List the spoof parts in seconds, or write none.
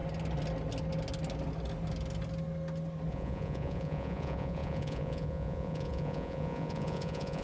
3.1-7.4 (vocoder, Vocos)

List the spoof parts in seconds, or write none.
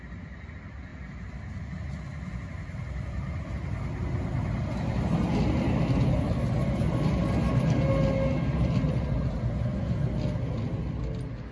none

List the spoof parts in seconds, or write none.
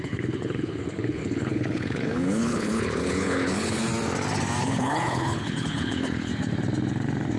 0.0-3.9 (codec, HILCodec); 4.6-6.3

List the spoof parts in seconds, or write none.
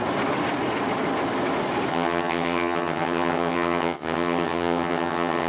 1.9-5.5 (vocoder, HiFi-GAN)